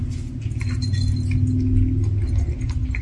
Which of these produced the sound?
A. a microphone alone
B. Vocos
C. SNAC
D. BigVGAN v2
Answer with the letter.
A